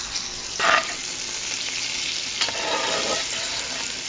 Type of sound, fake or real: real